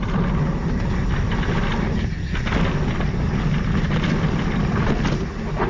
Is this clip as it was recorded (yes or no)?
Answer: yes